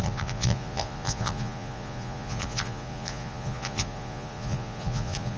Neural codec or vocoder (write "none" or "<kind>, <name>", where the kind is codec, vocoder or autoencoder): vocoder, Vocos